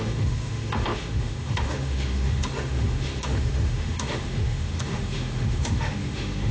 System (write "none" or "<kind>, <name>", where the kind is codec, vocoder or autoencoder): autoencoder, DAC-VAE